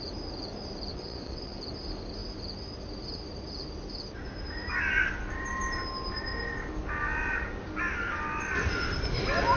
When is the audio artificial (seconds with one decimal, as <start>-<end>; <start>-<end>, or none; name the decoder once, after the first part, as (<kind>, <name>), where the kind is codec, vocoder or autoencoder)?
0.9-1.6 (vocoder, WaveNeXt)